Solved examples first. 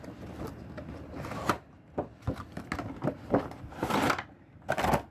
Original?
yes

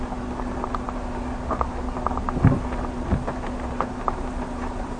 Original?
yes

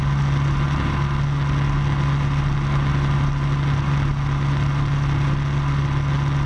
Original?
yes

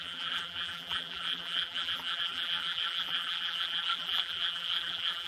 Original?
no